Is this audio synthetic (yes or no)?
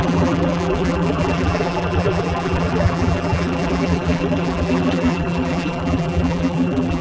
yes